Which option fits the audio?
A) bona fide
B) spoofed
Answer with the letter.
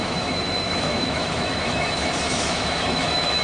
B